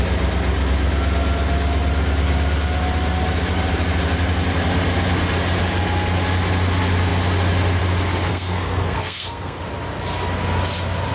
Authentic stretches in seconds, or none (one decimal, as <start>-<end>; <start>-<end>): 0.0-8.3; 9.6-11.1